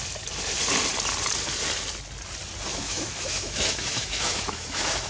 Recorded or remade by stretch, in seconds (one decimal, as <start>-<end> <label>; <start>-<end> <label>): 0.0-2.7 recorded; 2.7-5.1 remade